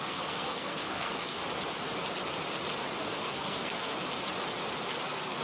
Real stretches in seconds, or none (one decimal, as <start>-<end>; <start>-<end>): 1.4-3.0; 3.9-5.0